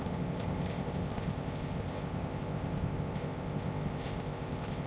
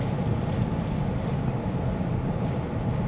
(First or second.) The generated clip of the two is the first